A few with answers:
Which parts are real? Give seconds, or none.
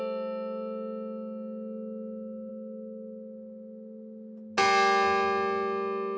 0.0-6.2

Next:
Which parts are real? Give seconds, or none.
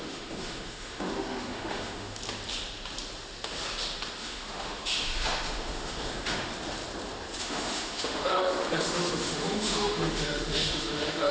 2.2-4.2; 6.5-7.4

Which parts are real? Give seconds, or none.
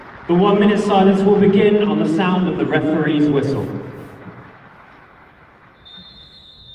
0.0-1.7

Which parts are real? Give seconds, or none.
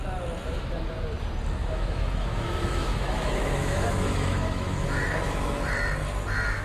0.0-1.6; 5.6-6.6